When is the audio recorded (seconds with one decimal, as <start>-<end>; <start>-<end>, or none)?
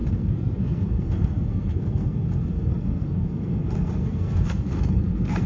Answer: none